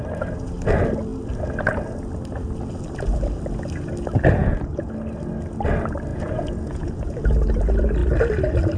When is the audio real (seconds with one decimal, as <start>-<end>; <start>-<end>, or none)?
0.0-4.4; 4.9-6.1; 7.2-8.8